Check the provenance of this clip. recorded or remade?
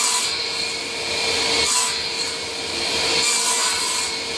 recorded